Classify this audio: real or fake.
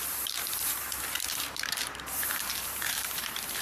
fake